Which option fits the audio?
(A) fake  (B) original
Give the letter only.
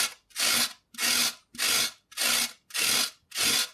B